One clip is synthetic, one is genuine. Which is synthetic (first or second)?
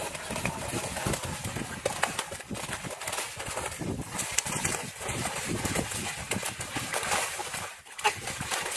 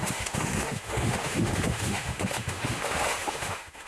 second